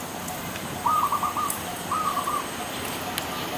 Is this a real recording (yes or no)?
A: yes